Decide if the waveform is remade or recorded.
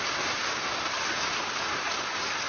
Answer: recorded